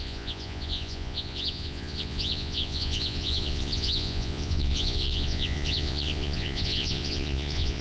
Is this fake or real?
fake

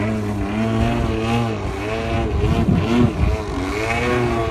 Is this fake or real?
real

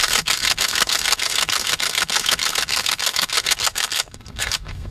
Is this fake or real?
fake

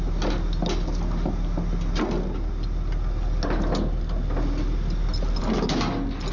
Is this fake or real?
real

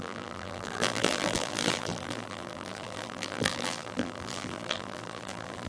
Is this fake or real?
fake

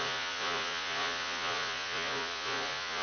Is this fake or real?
fake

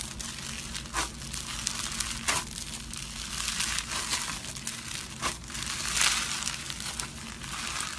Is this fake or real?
real